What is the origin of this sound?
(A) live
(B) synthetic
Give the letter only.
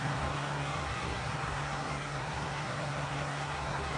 B